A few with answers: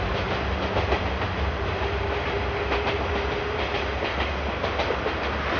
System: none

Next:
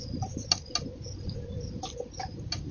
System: none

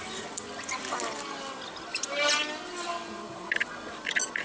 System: none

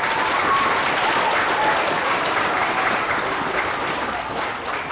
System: none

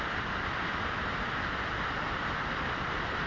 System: none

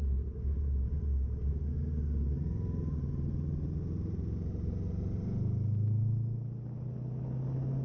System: none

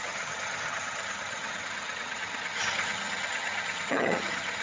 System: vocoder, HiFi-GAN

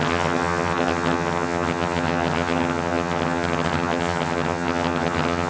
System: vocoder, HiFi-GAN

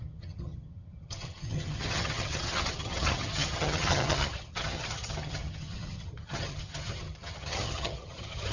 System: vocoder, HiFi-GAN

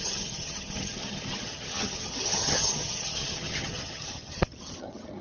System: vocoder, HiFi-GAN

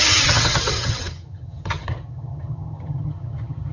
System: vocoder, HiFi-GAN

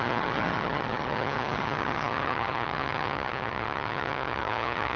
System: vocoder, HiFi-GAN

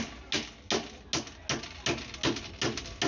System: none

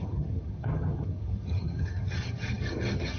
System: vocoder, HiFi-GAN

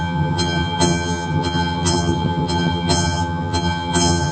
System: vocoder, HiFi-GAN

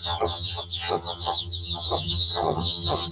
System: vocoder, HiFi-GAN